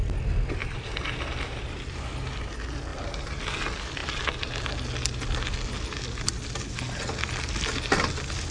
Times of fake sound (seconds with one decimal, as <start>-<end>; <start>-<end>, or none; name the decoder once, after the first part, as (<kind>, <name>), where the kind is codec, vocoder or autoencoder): 0.6-1.6 (vocoder, BigVGAN v2); 2.9-3.4